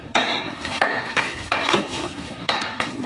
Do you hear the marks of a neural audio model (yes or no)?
yes